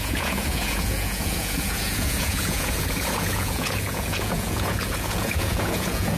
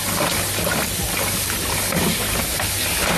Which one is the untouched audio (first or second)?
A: second